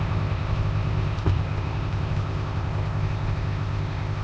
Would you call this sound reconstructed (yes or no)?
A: yes